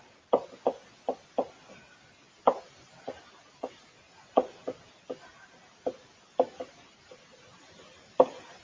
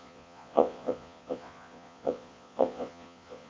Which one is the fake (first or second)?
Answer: second